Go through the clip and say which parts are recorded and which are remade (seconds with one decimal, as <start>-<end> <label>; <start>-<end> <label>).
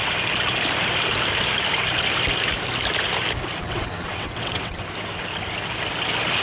0.0-3.6 recorded; 3.6-4.8 remade; 4.8-6.4 recorded